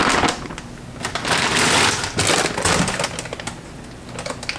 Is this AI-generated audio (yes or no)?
no